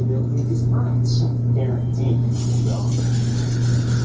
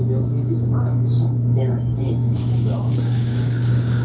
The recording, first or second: first